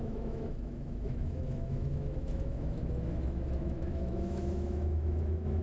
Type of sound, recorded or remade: remade